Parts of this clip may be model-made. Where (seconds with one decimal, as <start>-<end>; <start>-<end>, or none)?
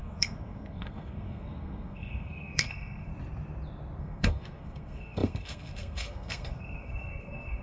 0.0-3.1; 4.0-7.6